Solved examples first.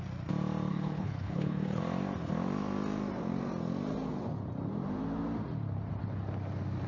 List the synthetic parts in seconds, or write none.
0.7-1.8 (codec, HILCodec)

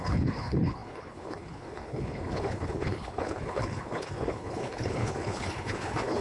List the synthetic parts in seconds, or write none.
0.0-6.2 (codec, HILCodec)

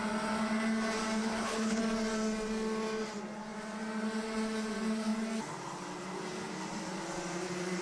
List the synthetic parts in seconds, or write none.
1.2-1.8 (codec, HILCodec)

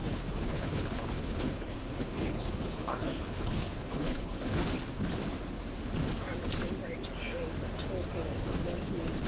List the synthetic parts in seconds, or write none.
0.0-4.7 (codec, HILCodec)